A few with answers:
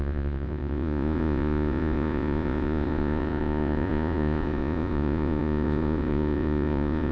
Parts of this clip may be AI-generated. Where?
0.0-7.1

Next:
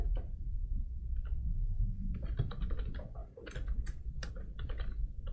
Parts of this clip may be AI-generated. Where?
1.5-2.1

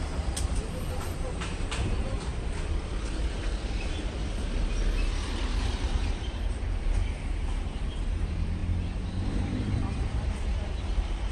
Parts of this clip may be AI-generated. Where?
0.0-2.3; 5.6-8.6; 9.3-11.3

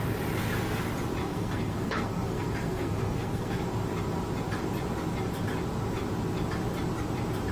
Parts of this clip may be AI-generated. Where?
1.2-3.6

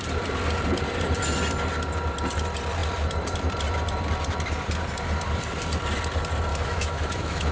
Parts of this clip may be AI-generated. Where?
6.5-7.5

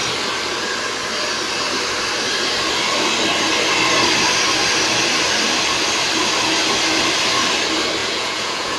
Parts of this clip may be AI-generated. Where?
8.0-8.8

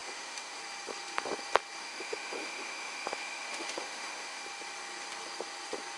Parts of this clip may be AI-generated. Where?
0.0-0.6; 1.8-4.4